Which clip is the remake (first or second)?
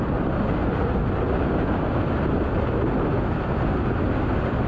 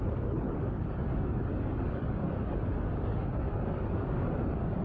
second